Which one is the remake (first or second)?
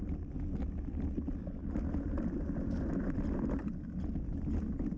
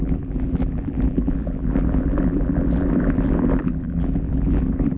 second